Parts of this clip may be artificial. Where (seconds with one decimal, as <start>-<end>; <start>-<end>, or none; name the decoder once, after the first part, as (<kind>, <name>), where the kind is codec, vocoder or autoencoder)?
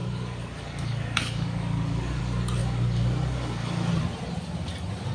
0.0-2.2 (codec, DAC); 2.6-3.9